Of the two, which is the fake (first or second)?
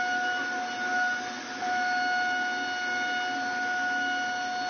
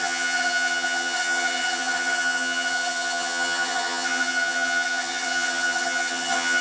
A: second